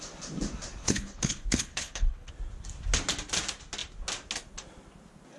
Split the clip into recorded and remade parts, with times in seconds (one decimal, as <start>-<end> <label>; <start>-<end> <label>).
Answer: 0.0-0.8 recorded; 0.8-2.3 remade; 2.3-5.4 recorded